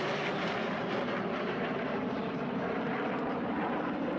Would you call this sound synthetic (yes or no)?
yes